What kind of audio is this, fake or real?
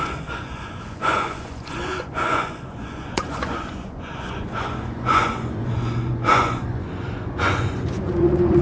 fake